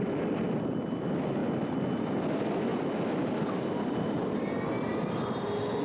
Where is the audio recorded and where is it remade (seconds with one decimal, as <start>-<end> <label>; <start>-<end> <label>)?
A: 0.0-5.8 recorded